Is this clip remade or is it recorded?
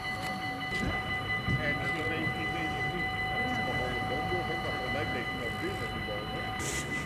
recorded